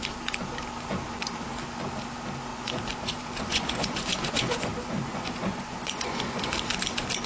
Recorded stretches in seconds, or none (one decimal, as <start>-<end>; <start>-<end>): 0.0-2.5; 6.5-7.3